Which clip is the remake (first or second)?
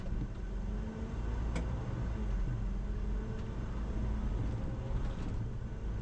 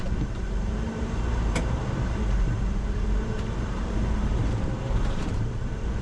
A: second